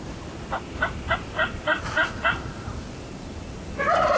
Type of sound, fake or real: real